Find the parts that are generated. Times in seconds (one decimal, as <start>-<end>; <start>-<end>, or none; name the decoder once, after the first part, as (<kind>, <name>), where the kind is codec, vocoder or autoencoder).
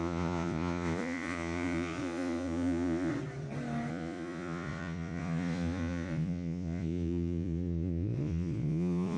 0.0-3.1 (vocoder, Vocos); 3.9-9.2